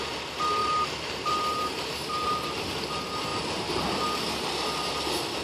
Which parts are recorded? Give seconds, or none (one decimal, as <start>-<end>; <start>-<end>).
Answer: 0.0-0.6; 2.6-3.3; 3.8-5.4